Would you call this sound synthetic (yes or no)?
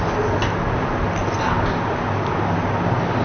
no